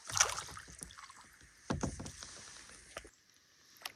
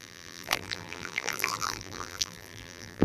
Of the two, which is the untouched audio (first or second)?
first